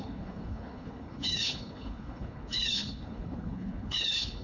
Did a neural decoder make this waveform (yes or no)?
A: yes